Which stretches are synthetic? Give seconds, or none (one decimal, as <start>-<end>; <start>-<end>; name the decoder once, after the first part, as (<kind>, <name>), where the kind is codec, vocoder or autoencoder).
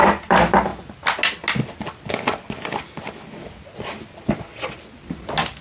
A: none